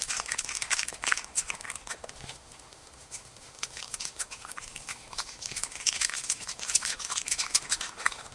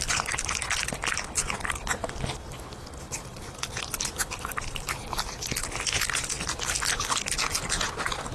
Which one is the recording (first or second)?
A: second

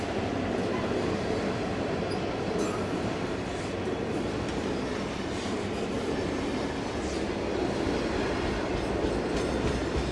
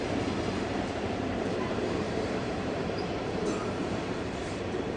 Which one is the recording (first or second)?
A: first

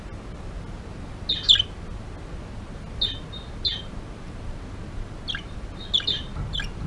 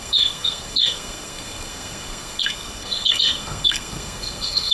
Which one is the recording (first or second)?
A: first